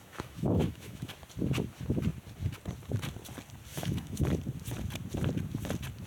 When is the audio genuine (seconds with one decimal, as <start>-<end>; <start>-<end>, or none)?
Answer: 1.1-3.7; 4.2-6.1